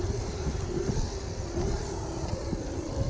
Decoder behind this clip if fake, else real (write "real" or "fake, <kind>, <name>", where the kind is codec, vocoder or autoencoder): real